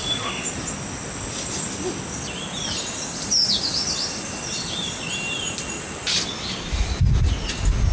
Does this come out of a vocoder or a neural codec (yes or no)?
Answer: no